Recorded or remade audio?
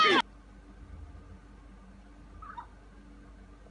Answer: recorded